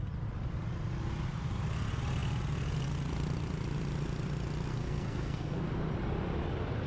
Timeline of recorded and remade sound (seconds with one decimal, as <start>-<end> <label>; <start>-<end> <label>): 0.0-4.7 recorded; 4.7-5.7 remade; 5.7-6.9 recorded